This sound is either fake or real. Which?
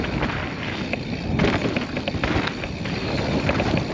real